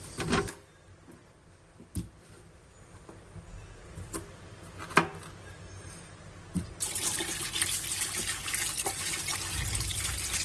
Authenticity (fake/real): real